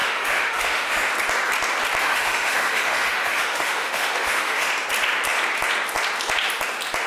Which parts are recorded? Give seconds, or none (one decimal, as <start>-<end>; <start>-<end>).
1.1-2.0; 4.7-7.1